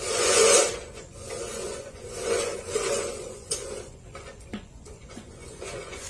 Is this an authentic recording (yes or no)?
no